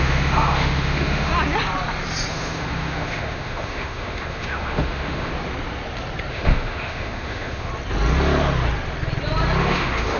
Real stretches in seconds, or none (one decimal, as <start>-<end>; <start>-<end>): 1.3-2.3; 5.3-6.3; 7.7-9.6